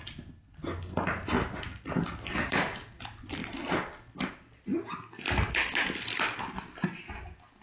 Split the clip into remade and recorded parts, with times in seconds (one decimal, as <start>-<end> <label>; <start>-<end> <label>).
0.0-7.6 recorded